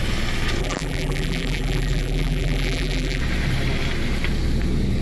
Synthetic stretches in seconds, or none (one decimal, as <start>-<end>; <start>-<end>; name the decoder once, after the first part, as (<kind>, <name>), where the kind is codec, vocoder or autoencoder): 0.6-3.2 (vocoder, BigVGAN v2)